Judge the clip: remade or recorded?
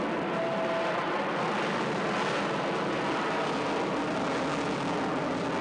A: recorded